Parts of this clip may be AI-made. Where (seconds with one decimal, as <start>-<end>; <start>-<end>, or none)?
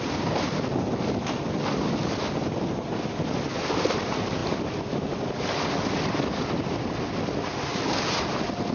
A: none